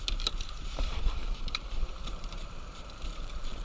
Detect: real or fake fake